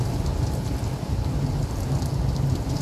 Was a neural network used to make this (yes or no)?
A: no